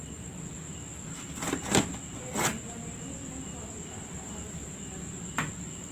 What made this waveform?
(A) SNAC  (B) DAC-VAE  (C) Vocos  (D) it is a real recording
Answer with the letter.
D